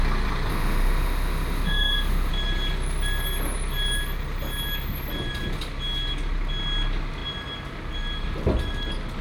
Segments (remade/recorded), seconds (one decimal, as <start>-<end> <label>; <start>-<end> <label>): 0.0-0.5 recorded; 0.5-2.3 remade; 2.3-9.2 recorded

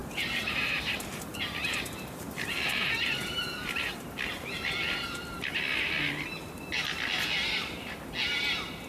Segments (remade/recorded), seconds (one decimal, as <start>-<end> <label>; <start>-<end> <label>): 0.0-4.5 remade; 4.5-8.9 recorded

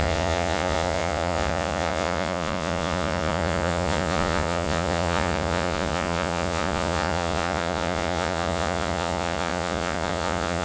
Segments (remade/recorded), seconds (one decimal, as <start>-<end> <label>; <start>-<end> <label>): 0.0-10.6 remade

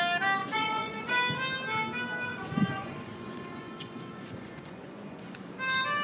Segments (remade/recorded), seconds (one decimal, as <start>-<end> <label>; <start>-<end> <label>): 0.0-0.4 recorded; 0.4-1.1 remade; 1.1-2.3 recorded; 2.3-5.5 remade; 5.5-6.0 recorded

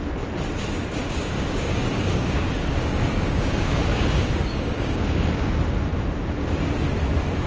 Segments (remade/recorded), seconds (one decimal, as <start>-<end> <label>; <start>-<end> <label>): 0.0-1.0 recorded; 1.0-5.5 remade; 5.5-7.5 recorded